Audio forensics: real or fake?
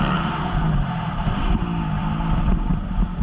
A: real